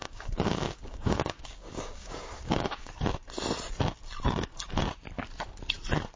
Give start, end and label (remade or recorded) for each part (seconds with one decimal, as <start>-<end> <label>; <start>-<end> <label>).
0.0-2.9 remade; 2.9-6.2 recorded